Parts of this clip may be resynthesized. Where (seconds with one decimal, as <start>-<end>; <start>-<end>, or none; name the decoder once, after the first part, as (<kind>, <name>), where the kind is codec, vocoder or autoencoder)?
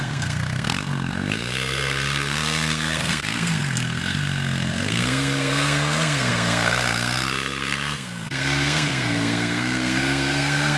0.0-10.8 (codec, SNAC)